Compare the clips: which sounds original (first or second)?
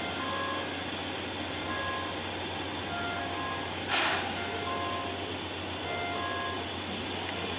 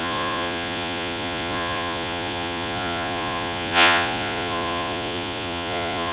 first